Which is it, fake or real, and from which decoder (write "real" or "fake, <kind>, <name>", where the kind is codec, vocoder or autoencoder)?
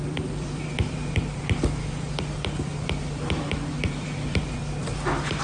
fake, vocoder, BigVGAN v2